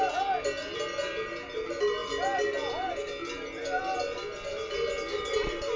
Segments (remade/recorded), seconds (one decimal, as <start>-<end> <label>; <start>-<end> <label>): 0.0-5.8 recorded

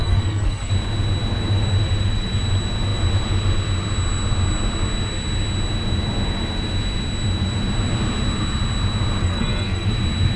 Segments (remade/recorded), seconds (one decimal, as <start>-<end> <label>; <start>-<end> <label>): 0.0-0.7 remade; 0.7-9.2 recorded; 9.2-9.9 remade; 9.9-10.4 recorded